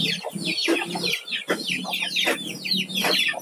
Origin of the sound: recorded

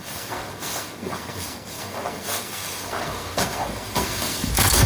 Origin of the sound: remade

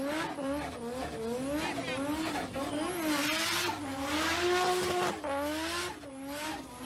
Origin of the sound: recorded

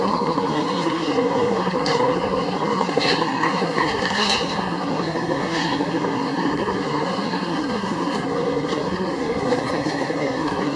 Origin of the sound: remade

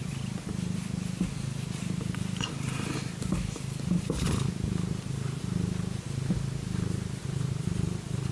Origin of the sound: recorded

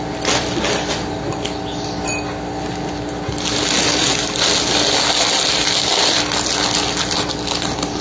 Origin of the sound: recorded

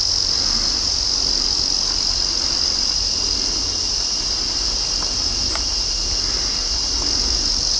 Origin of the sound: recorded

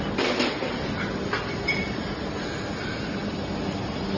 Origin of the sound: recorded